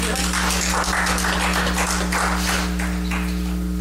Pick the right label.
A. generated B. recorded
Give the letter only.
B